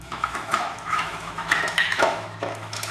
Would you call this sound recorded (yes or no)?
no